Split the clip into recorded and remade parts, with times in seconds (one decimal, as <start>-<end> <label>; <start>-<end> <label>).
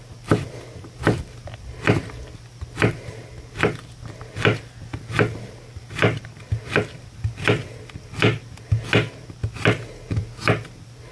0.0-11.1 recorded